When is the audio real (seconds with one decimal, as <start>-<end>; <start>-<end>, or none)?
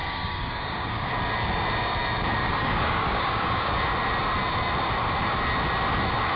1.1-2.4; 3.7-6.4